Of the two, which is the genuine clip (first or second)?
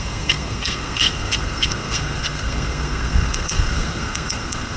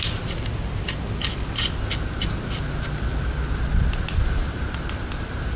second